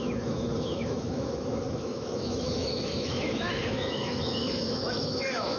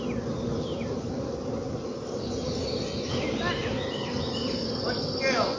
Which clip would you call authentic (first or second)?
second